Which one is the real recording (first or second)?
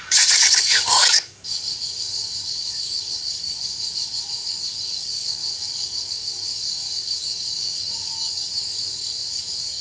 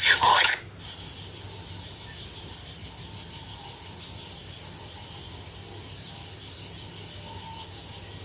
second